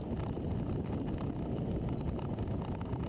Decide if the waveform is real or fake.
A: real